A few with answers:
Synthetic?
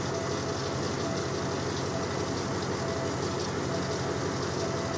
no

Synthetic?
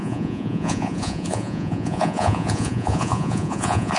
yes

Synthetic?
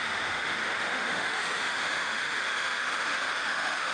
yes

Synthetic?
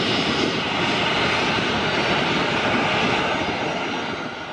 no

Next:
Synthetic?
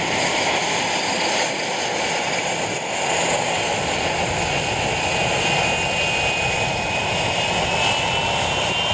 no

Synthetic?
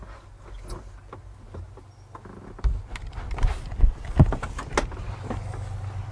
no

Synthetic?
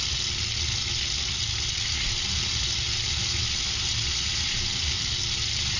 no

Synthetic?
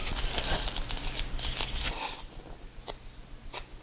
no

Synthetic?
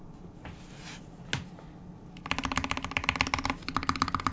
no